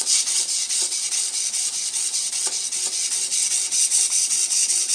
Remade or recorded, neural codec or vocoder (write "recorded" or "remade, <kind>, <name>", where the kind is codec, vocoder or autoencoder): remade, vocoder, WaveNeXt